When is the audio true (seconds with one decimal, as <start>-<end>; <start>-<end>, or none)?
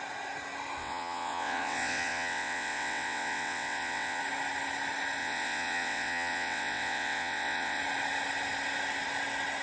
0.0-0.8; 4.2-5.2; 7.8-9.6